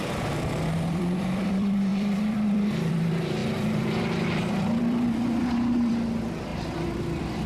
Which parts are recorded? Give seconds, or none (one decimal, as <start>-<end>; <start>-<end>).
none